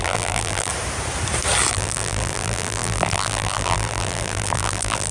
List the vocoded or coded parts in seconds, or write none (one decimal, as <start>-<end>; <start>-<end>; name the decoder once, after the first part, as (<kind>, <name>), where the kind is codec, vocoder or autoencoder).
0.0-0.7 (vocoder, BigVGAN v2); 1.7-5.1

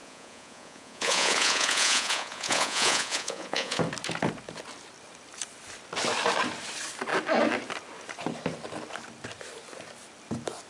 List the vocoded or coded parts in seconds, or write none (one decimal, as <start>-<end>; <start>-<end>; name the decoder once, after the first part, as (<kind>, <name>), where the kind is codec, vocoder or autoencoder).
0.0-3.8 (vocoder, Vocos)

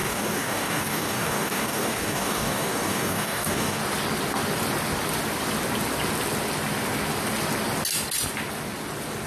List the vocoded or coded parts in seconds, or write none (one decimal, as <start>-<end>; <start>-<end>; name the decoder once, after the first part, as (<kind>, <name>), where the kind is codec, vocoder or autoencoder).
0.0-3.8 (codec, DAC)

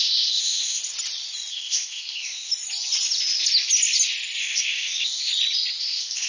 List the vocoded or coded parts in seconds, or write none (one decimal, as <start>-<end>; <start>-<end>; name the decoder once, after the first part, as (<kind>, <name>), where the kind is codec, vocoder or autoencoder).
0.0-0.8 (codec, ZipCodec); 1.5-2.5; 4.4-5.3; 5.8-6.3

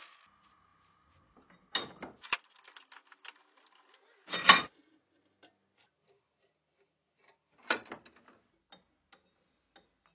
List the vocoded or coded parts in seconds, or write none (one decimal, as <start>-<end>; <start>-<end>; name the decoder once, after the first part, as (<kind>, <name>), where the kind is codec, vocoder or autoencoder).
none

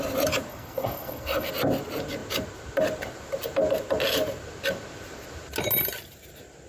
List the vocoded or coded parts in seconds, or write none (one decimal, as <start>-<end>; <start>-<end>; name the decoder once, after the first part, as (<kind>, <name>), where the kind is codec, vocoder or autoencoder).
0.5-1.5 (codec, SNAC)

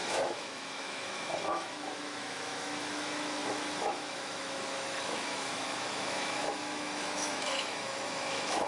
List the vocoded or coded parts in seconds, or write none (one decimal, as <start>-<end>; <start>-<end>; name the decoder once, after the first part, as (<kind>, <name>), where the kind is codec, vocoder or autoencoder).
0.0-8.7 (autoencoder, DAC-VAE)

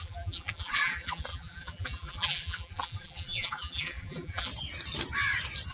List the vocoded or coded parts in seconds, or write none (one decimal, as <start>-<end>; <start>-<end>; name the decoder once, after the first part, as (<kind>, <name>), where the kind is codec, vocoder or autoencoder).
0.0-4.5 (vocoder, BigVGAN v2)